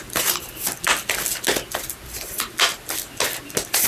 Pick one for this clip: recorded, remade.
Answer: recorded